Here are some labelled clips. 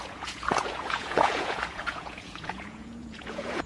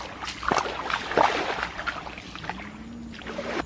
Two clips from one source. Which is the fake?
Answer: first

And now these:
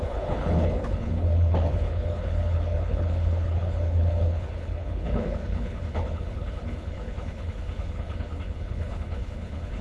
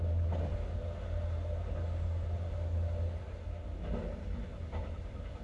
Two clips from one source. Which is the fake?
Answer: first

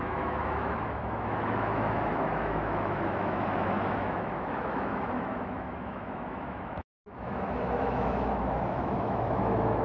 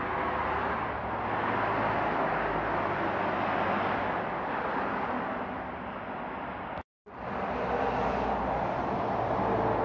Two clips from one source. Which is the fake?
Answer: first